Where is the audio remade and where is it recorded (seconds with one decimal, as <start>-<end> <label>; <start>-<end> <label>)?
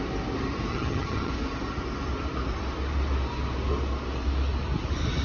0.0-0.7 recorded; 0.7-1.3 remade; 1.3-5.2 recorded